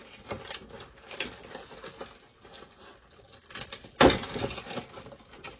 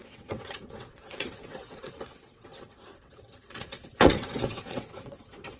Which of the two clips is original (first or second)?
first